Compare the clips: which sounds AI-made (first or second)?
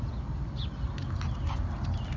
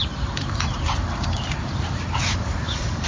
second